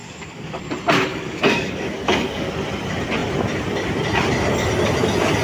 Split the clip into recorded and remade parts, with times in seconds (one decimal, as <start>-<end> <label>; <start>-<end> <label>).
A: 0.0-0.6 remade; 0.6-1.1 recorded; 1.1-2.5 remade; 2.5-5.4 recorded